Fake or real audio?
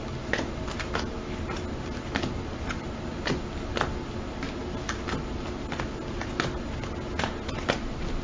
real